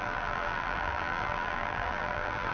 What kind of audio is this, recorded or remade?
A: remade